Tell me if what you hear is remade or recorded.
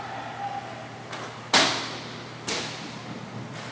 recorded